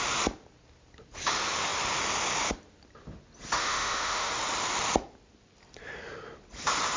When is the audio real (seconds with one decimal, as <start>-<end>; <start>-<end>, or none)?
0.0-3.6; 4.3-7.0